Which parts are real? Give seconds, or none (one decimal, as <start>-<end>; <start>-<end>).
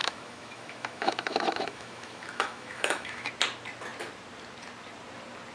3.3-5.5